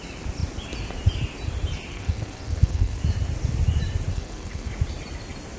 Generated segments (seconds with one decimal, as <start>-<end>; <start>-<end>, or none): 1.9-3.0; 4.1-4.7